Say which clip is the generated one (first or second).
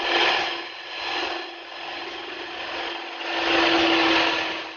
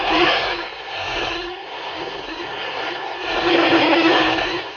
second